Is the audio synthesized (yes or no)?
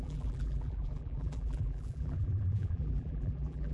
yes